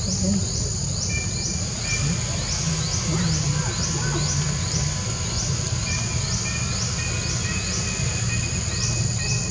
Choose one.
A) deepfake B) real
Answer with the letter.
B